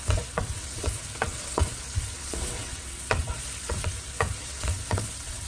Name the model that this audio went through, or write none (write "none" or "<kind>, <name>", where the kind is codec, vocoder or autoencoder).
vocoder, WaveNeXt